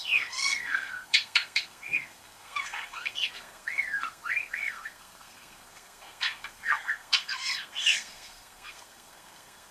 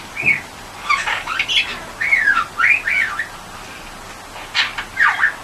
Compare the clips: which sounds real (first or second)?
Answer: second